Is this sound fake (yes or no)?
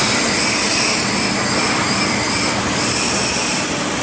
no